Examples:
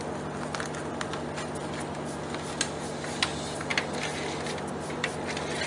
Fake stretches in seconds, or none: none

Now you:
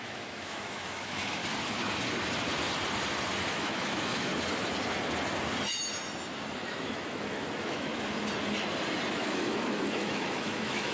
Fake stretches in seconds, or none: 0.0-1.4 (autoencoder, DAC-VAE); 3.5-4.3; 6.7-7.9; 9.1-10.9

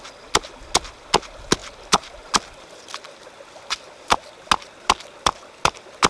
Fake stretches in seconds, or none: none

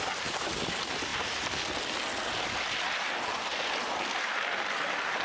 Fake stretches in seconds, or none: none

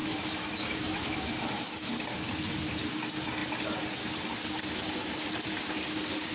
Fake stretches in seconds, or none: 0.0-1.9 (autoencoder, DAC-VAE)

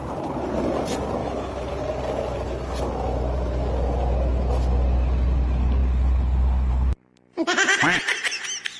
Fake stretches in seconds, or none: 1.2-1.7 (autoencoder, DAC-VAE)

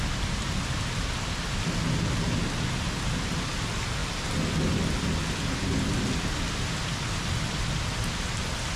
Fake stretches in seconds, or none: none

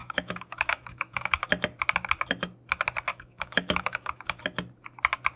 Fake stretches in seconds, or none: 0.0-1.5 (autoencoder, DAC-VAE); 3.1-4.4